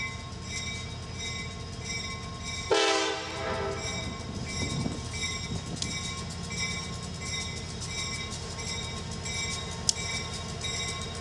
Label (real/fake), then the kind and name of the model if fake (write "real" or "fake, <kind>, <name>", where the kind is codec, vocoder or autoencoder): real